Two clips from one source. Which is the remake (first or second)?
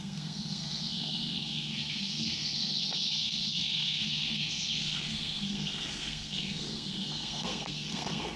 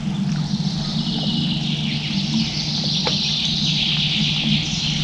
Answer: first